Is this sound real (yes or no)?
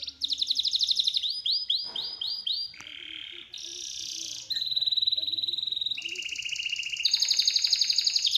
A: yes